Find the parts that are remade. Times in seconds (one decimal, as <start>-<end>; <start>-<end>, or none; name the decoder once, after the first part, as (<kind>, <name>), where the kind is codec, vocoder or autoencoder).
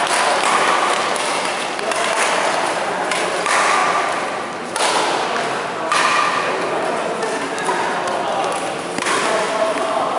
none